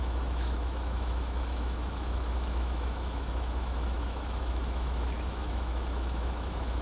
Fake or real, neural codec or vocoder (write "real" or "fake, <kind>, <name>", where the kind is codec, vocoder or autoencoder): fake, autoencoder, DAC-VAE